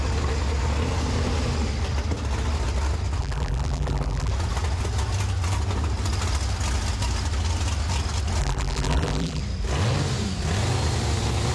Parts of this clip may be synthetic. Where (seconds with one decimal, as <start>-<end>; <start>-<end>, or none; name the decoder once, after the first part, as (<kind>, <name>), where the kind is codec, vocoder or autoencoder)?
3.2-4.3 (vocoder, BigVGAN v2); 8.4-9.4